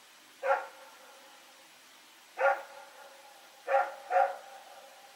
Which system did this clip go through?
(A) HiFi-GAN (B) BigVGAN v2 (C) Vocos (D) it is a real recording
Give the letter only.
D